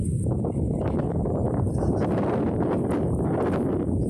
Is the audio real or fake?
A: real